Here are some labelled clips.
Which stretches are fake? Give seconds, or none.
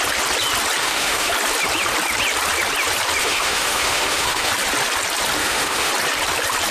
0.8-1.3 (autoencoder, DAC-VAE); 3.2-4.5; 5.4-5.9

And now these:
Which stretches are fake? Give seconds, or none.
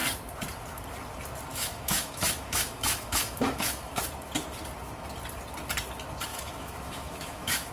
1.5-4.0 (autoencoder, DAC-VAE); 6.3-7.7